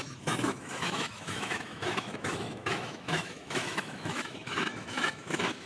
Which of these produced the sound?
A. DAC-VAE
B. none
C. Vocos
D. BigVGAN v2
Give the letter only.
A